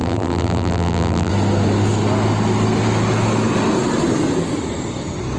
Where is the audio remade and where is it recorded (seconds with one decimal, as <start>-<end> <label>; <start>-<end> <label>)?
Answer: 0.0-1.3 remade; 1.3-5.4 recorded